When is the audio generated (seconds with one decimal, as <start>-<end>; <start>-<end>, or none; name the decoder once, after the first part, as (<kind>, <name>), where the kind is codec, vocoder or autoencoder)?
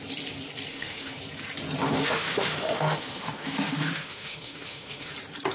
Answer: 0.7-1.2 (autoencoder, DAC-VAE); 1.8-5.1